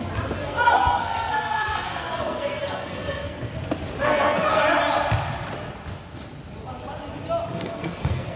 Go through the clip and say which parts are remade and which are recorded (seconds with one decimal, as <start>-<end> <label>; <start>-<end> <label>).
0.0-0.4 recorded; 0.4-3.5 remade; 3.5-4.0 recorded; 4.0-4.6 remade; 4.6-7.5 recorded; 7.5-8.4 remade